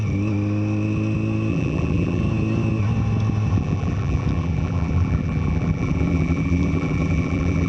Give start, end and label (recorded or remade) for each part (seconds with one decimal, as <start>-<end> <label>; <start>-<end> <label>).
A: 0.0-1.5 recorded; 1.5-2.2 remade; 2.2-3.5 recorded; 3.5-7.7 remade